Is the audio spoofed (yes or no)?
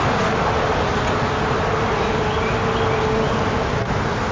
no